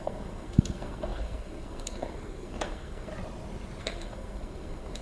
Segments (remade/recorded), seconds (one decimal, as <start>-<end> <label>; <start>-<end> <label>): 0.0-3.1 remade; 3.1-3.8 recorded; 3.8-5.0 remade